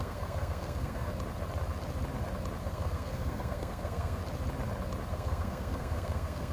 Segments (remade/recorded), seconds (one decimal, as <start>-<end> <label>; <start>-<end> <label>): 0.0-1.1 remade; 1.1-2.6 recorded; 2.6-4.2 remade; 4.2-5.1 recorded; 5.1-6.5 remade